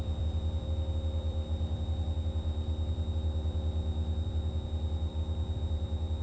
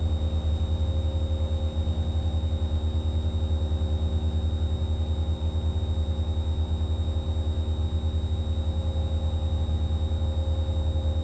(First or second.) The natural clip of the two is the second